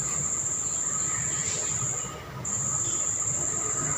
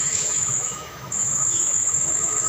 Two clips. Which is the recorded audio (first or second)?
first